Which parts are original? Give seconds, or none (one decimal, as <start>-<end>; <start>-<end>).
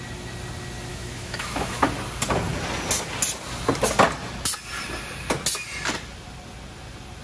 0.0-0.9; 1.8-7.2